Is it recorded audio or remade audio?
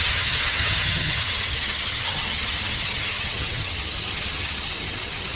remade